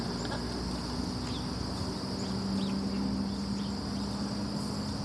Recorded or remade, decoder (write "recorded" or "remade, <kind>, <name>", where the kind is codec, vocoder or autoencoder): recorded